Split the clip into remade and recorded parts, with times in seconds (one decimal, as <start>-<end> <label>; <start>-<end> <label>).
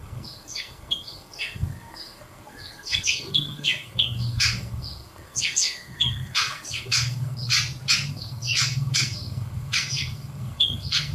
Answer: 0.0-7.5 remade; 7.5-8.1 recorded; 8.1-11.1 remade